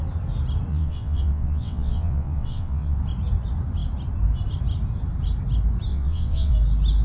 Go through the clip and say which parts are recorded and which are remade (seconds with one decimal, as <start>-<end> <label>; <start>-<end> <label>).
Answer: 0.0-0.7 recorded; 0.7-3.0 remade; 3.0-5.9 recorded; 5.9-6.5 remade; 6.5-7.0 recorded